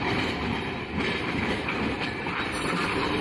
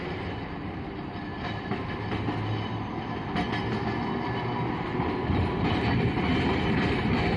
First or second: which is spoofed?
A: first